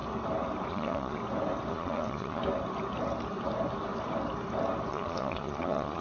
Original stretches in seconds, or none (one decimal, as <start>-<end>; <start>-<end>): 0.0-0.7; 1.2-1.7; 2.4-4.9